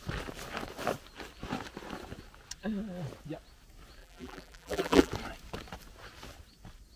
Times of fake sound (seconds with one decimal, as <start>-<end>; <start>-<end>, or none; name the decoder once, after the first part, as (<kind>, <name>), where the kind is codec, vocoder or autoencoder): 4.0-5.1 (vocoder, BigVGAN v2)

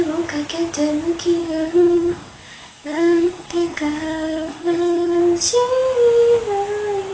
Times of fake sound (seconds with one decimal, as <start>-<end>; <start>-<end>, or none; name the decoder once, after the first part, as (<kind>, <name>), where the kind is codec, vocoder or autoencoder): 1.4-5.2 (codec, SNAC)

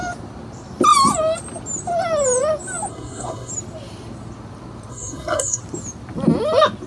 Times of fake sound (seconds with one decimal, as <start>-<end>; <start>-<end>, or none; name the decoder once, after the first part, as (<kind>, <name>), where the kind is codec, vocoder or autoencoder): 2.9-3.5 (codec, SNAC); 4.9-5.6

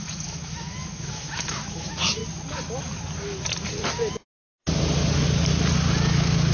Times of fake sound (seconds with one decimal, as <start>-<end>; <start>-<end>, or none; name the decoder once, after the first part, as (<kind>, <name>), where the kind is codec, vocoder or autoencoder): 0.0-2.2 (autoencoder, DAC-VAE); 6.1-6.5

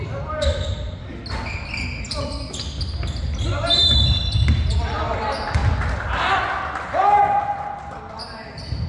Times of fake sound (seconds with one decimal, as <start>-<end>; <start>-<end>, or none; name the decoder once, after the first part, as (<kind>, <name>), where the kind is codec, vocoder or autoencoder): none

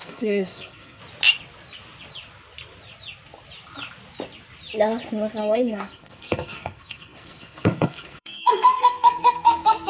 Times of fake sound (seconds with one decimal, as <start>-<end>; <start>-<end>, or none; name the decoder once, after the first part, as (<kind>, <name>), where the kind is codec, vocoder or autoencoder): 0.0-1.0 (codec, SNAC); 5.4-9.9

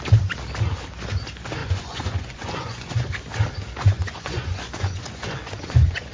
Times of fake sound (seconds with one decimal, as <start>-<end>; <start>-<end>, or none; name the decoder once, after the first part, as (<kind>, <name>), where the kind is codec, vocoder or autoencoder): 1.6-3.1 (vocoder, Vocos); 3.8-6.1

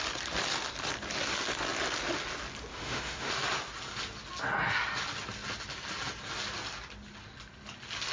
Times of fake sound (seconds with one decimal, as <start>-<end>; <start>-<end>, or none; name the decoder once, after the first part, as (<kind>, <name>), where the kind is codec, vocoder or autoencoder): 2.7-3.3 (autoencoder, DAC-VAE)